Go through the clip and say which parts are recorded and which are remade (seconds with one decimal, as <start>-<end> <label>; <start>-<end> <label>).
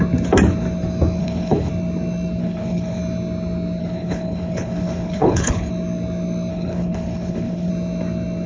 0.0-1.2 recorded; 1.2-1.7 remade; 1.7-2.4 recorded; 2.4-3.0 remade; 3.0-3.8 recorded; 3.8-5.7 remade; 5.7-6.5 recorded; 6.5-7.7 remade; 7.7-8.5 recorded